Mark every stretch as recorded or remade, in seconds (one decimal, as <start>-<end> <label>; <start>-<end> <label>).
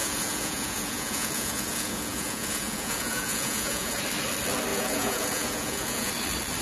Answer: 0.0-4.0 remade; 4.0-4.7 recorded; 4.7-6.1 remade; 6.1-6.6 recorded